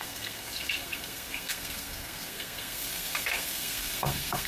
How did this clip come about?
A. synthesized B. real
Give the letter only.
A